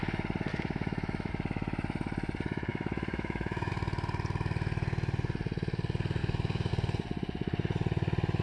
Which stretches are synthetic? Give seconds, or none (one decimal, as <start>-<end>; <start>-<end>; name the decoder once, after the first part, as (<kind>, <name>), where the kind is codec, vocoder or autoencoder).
0.5-1.3 (autoencoder, DAC-VAE); 2.7-3.7; 6.2-6.7